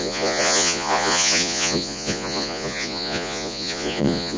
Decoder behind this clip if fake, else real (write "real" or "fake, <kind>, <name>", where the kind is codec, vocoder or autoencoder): fake, vocoder, Vocos